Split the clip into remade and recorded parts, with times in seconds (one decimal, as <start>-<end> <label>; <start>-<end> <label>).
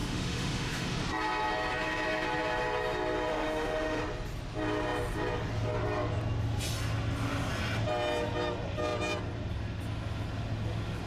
0.0-1.0 remade; 1.0-3.3 recorded; 3.3-4.0 remade; 4.0-11.1 recorded